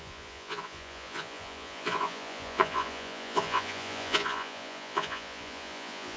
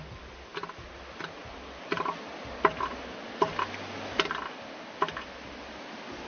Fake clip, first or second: first